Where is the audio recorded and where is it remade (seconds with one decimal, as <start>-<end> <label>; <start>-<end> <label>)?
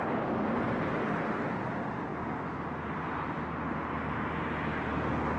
0.0-5.4 recorded